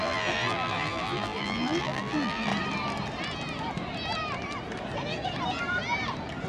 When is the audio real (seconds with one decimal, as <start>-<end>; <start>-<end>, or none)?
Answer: 2.5-6.5